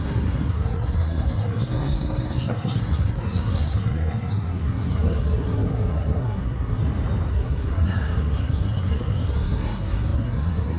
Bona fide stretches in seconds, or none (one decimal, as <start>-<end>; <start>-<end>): 6.8-7.3